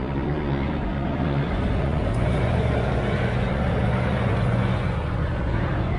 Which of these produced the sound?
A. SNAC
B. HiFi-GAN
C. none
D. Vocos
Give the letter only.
D